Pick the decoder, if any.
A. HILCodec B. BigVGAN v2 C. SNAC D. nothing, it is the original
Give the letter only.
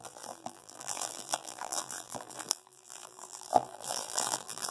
B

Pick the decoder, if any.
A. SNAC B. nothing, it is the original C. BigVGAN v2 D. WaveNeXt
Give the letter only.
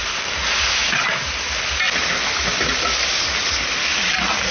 B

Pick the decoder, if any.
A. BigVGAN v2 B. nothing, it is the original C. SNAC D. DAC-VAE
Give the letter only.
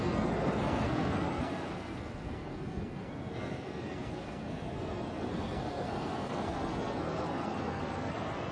C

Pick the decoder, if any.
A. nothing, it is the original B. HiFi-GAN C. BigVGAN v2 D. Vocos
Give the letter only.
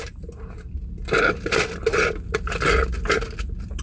A